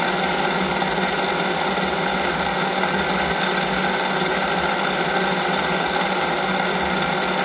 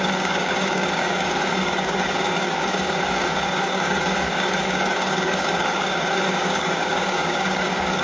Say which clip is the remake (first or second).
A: second